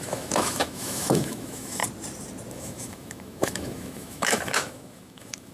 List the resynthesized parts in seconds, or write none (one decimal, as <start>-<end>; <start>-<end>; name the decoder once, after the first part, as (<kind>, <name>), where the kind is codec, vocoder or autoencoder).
0.0-1.8 (autoencoder, DAC-VAE); 2.5-5.5